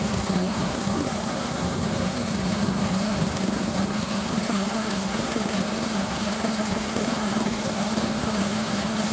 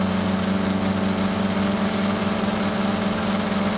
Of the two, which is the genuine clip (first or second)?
second